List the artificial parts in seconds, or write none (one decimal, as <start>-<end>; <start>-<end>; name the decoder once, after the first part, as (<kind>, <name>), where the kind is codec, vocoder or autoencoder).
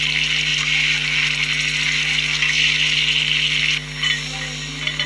none